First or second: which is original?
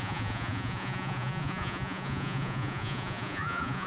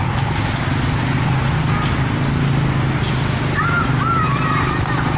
second